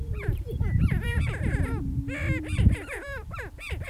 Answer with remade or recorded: remade